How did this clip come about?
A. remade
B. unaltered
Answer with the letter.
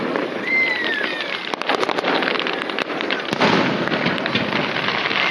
A